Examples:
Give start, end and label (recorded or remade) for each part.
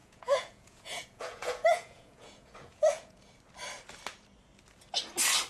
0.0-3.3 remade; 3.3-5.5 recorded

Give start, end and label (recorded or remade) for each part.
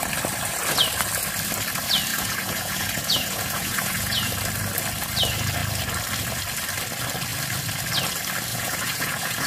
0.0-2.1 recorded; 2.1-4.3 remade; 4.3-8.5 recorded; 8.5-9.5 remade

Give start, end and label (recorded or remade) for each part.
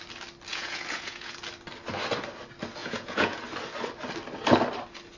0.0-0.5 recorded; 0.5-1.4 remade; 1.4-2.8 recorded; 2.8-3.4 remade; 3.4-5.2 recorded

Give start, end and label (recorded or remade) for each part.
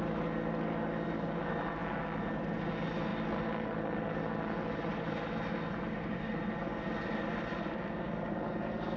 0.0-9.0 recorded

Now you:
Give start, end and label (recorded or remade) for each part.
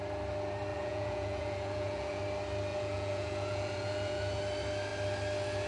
0.0-0.7 recorded; 0.7-2.2 remade; 2.2-2.7 recorded; 2.7-4.4 remade; 4.4-5.7 recorded